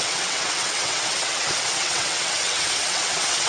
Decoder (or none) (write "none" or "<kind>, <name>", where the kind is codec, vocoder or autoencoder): vocoder, WaveNeXt